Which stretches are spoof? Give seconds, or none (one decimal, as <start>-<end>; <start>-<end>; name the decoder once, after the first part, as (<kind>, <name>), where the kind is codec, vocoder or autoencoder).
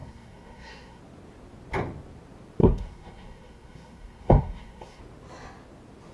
0.0-1.0 (codec, SNAC); 2.6-5.0